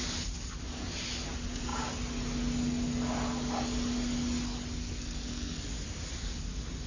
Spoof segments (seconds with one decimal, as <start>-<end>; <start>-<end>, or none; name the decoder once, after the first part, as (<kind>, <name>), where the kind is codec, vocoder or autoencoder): 4.8-5.6 (codec, SNAC)